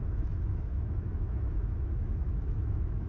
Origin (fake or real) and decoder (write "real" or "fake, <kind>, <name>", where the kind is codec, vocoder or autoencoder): fake, autoencoder, DAC-VAE